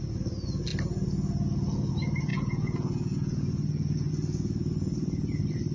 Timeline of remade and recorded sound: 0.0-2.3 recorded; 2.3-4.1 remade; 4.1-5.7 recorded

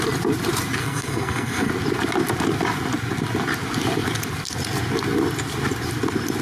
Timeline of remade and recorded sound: 0.0-0.8 recorded; 0.8-1.7 remade; 1.7-6.4 recorded

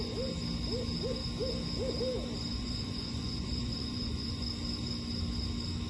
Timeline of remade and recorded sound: 0.0-2.5 recorded; 2.5-4.5 remade; 4.5-5.9 recorded

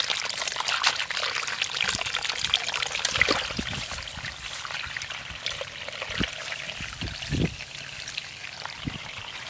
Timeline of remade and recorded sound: 0.0-8.4 recorded; 8.4-9.5 remade

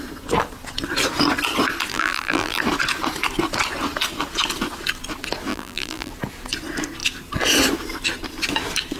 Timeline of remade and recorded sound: 0.0-1.9 recorded; 1.9-2.6 remade; 2.6-5.5 recorded; 5.5-6.1 remade; 6.1-9.0 recorded

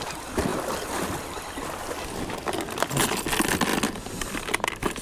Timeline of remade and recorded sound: 0.0-5.0 recorded